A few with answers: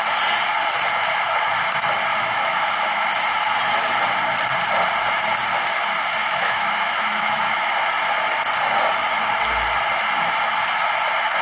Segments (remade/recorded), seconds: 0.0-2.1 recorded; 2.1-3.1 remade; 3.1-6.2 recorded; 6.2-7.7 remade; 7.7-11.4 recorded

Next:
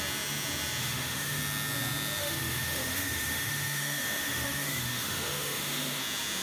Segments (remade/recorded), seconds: 0.0-0.8 recorded; 0.8-1.4 remade; 1.4-2.2 recorded; 2.2-6.0 remade; 6.0-6.4 recorded

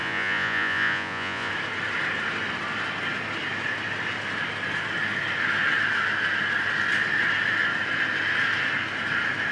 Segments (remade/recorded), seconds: 0.0-1.5 remade; 1.5-9.5 recorded

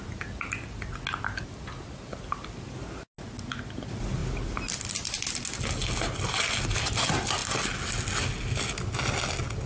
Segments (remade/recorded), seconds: 0.0-9.7 recorded

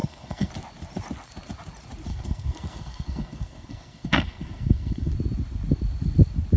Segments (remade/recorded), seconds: 0.0-0.5 remade; 0.5-2.1 recorded; 2.1-5.1 remade; 5.1-6.6 recorded

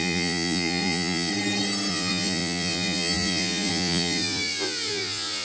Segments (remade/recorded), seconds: 0.0-1.3 remade; 1.3-1.9 recorded; 1.9-5.4 remade

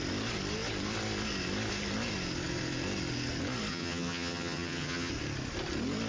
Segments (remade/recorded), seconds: 0.0-3.7 recorded; 3.7-5.1 remade; 5.1-6.1 recorded